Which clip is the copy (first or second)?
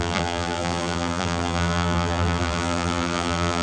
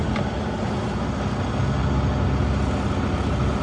first